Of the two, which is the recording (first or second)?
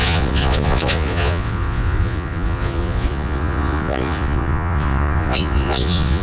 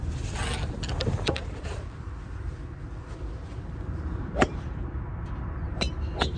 second